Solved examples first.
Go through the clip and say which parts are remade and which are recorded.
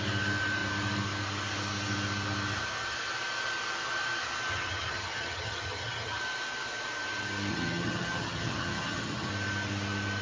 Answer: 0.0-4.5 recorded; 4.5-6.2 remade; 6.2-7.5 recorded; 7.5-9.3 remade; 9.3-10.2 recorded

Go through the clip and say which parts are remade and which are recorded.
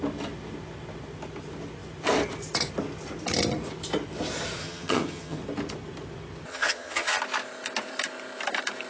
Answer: 0.0-4.6 recorded; 4.6-5.4 remade; 5.4-6.5 recorded; 6.5-7.2 remade; 7.2-8.9 recorded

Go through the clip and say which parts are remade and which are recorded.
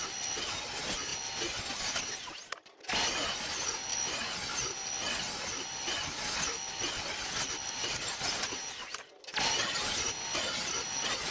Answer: 0.0-11.3 recorded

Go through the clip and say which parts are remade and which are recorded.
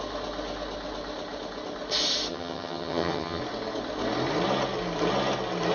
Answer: 0.0-2.3 recorded; 2.3-3.4 remade; 3.4-5.7 recorded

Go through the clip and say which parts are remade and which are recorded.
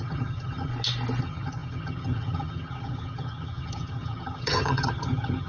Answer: 0.0-0.7 remade; 0.7-1.2 recorded; 1.2-5.5 remade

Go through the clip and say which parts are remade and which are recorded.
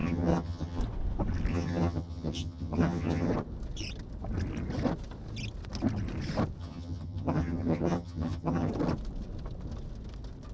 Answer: 0.0-0.8 remade; 0.8-1.5 recorded; 1.5-3.3 remade; 3.3-6.6 recorded; 6.6-8.7 remade; 8.7-10.5 recorded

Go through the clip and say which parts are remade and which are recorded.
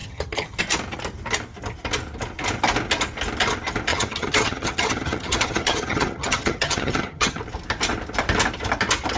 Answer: 0.0-0.6 remade; 0.6-3.9 recorded; 3.9-7.4 remade; 7.4-9.2 recorded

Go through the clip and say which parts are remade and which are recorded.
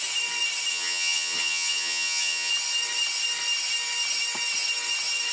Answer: 0.0-0.7 recorded; 0.7-2.5 remade; 2.5-5.3 recorded